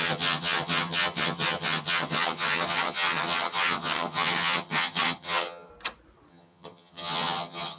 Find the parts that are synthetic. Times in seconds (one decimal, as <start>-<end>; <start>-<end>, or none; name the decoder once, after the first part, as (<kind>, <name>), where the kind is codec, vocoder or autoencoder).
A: 0.0-5.7 (vocoder, HiFi-GAN); 6.3-7.8